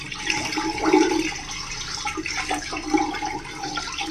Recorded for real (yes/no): yes